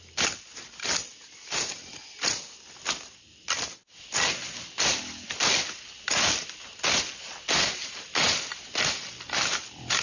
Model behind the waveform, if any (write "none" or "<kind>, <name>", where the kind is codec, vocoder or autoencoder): none